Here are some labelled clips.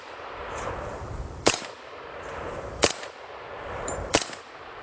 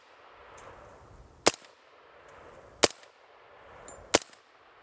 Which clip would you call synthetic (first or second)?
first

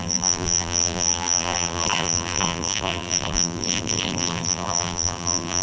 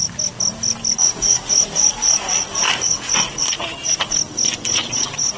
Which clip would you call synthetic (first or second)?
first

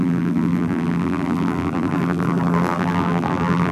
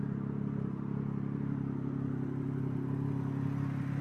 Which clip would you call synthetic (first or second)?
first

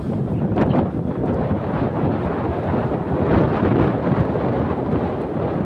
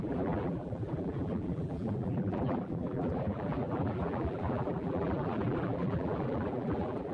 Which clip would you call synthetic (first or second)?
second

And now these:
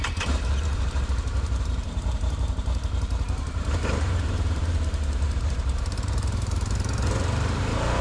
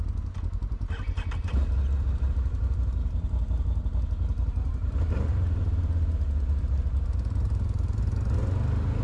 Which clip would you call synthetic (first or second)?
first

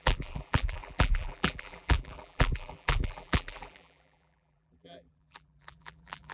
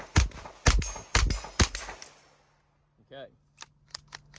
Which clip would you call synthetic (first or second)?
first